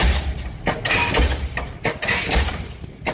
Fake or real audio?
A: real